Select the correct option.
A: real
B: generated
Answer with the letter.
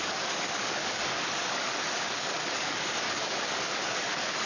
B